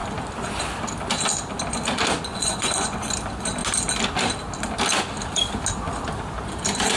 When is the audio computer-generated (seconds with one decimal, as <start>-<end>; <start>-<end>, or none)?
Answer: 2.3-3.1